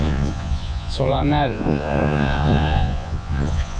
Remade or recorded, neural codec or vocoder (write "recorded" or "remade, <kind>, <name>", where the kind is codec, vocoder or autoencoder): remade, vocoder, Vocos